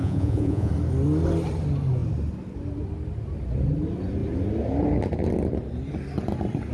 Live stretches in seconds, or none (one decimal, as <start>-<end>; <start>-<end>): 0.7-6.7